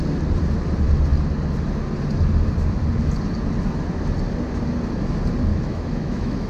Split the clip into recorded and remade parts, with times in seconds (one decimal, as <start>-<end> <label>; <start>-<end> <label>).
0.0-5.5 recorded; 5.5-6.5 remade